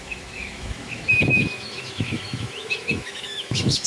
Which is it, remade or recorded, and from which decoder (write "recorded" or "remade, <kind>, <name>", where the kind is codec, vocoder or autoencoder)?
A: remade, autoencoder, DAC-VAE